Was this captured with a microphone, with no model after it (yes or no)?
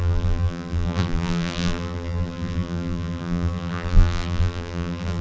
no